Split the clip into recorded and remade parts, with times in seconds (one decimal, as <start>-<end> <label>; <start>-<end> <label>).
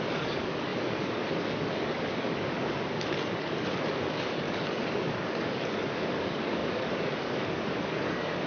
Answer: 0.0-8.5 remade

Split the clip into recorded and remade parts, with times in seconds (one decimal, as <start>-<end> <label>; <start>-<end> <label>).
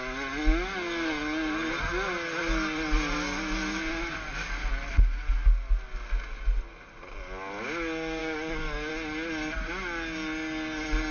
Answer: 0.0-8.2 recorded; 8.2-8.9 remade; 8.9-11.1 recorded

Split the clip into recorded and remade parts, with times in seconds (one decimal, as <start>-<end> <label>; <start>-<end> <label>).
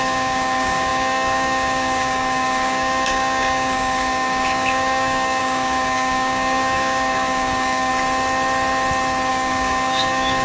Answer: 0.0-7.9 remade; 7.9-9.3 recorded; 9.3-10.4 remade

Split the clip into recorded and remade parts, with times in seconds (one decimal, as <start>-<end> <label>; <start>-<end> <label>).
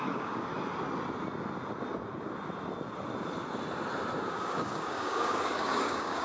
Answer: 0.0-0.5 remade; 0.5-4.2 recorded; 4.2-6.2 remade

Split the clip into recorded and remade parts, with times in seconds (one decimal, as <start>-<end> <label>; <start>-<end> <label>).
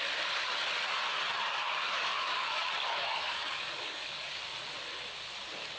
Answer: 0.0-1.5 recorded; 1.5-4.4 remade; 4.4-5.8 recorded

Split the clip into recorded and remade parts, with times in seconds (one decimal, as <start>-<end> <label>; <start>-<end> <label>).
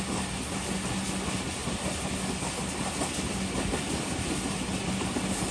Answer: 0.0-5.5 recorded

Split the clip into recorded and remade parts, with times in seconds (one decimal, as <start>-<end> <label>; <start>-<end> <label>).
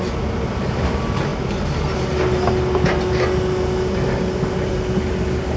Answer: 0.0-5.6 recorded